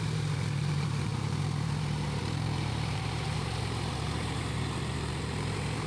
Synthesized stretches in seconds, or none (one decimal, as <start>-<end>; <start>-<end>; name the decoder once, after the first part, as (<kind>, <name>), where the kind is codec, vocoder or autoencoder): 0.0-5.9 (vocoder, BigVGAN v2)